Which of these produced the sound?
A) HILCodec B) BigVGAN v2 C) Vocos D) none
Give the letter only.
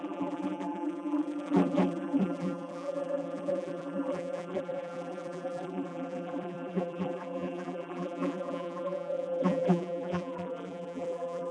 B